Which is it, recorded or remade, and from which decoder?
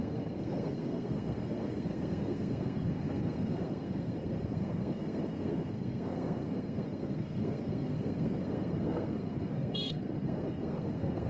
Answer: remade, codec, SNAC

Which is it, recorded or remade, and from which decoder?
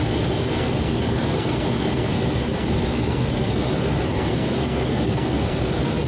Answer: remade, codec, SNAC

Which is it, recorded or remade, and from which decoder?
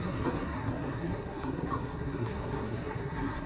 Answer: remade, codec, SNAC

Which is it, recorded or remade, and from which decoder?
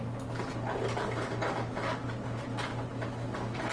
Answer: recorded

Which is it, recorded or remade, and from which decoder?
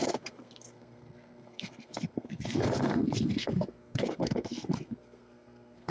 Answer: remade, codec, SNAC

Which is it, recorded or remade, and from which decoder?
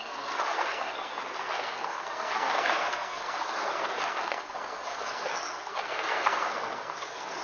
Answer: remade, codec, SNAC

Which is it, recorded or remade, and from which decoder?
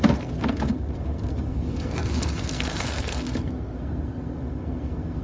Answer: remade, codec, SNAC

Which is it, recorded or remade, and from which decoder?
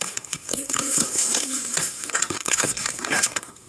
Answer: remade, codec, SNAC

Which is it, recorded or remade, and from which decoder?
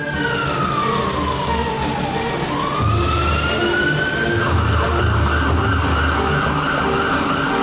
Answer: recorded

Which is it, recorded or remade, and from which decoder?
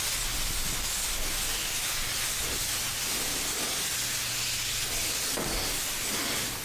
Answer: recorded